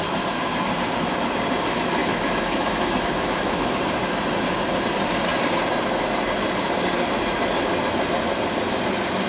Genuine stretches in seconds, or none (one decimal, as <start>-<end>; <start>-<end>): 0.0-2.0; 3.7-9.3